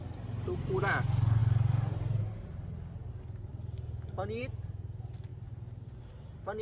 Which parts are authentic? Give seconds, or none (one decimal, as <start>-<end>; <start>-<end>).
0.0-6.6